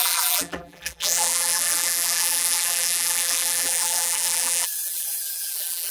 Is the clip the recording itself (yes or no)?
no